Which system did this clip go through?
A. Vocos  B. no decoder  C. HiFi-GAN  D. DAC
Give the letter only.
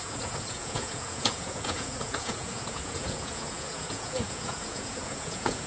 A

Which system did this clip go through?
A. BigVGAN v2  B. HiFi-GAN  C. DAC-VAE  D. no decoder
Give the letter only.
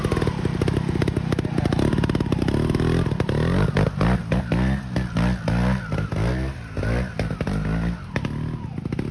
D